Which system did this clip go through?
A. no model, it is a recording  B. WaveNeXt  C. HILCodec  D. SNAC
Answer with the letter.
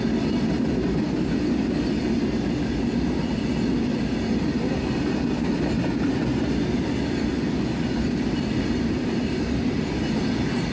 A